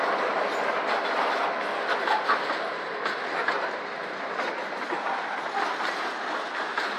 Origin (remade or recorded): recorded